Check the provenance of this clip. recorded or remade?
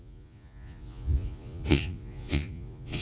remade